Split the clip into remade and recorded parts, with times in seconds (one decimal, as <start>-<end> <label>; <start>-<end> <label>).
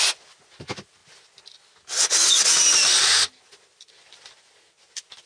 0.0-5.3 recorded